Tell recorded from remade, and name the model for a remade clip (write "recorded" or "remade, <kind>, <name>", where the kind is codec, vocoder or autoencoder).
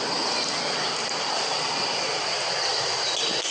recorded